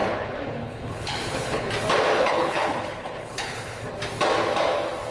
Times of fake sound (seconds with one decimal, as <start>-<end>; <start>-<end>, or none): 0.0-1.7; 2.1-3.9